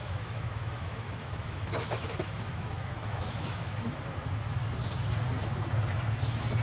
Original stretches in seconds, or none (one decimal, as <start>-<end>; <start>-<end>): 4.0-6.6